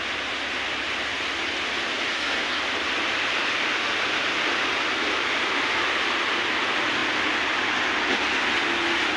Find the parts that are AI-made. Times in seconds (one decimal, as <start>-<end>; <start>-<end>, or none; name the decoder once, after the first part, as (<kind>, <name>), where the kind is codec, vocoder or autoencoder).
2.1-2.6 (codec, SNAC)